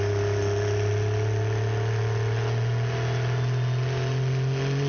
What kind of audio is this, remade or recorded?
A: recorded